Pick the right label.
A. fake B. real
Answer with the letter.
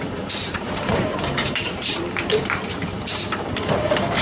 A